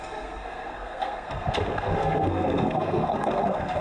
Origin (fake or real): fake